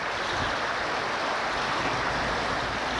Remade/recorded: recorded